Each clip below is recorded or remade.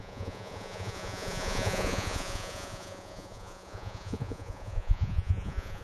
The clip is remade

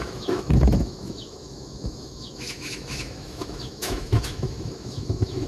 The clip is remade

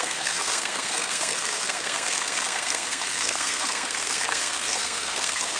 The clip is remade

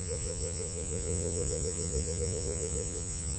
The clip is remade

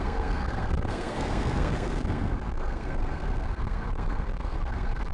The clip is remade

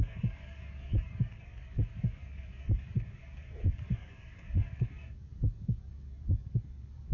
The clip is remade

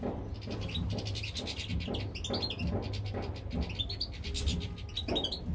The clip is recorded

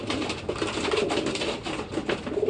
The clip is recorded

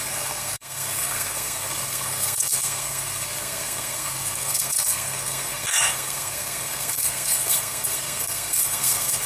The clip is remade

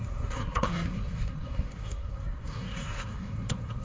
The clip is remade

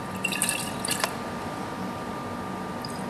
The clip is recorded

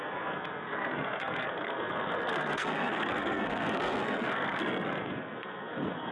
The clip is remade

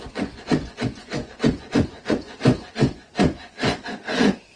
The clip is remade